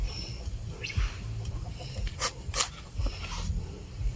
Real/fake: real